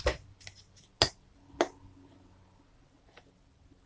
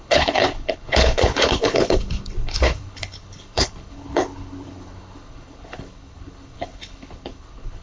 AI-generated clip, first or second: second